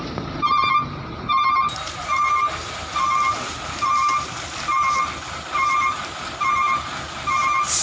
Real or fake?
real